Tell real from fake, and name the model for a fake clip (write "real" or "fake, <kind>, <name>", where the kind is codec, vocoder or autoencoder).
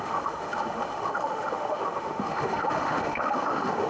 fake, autoencoder, DAC-VAE